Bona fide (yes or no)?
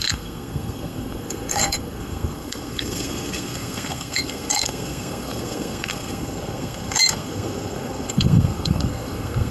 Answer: no